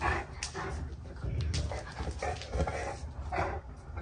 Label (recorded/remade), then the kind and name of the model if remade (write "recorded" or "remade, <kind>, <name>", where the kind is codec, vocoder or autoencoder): recorded